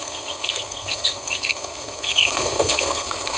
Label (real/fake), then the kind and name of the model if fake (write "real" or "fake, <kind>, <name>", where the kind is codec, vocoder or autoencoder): fake, codec, SNAC